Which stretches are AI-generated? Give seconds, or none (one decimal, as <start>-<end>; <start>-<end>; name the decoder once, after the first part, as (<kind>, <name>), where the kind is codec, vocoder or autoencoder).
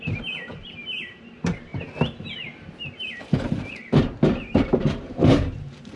0.0-1.7 (vocoder, BigVGAN v2); 3.1-6.0